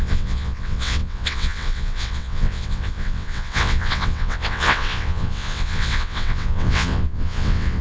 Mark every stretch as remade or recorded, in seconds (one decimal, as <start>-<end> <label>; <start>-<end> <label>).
0.0-7.8 remade